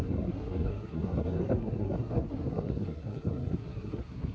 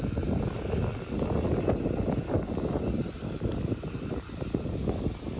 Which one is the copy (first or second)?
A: first